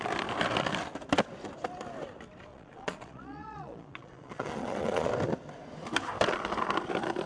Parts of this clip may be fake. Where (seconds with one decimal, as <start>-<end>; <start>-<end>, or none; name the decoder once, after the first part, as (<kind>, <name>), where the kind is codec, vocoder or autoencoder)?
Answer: 2.5-5.1 (vocoder, Vocos)